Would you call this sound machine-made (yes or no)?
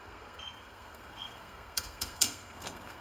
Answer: yes